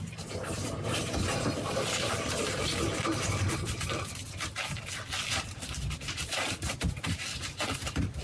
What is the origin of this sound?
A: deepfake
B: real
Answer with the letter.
B